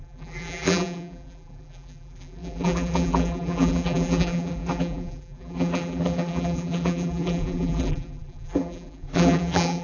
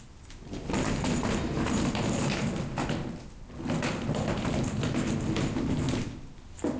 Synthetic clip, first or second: first